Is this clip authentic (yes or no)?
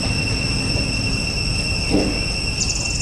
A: yes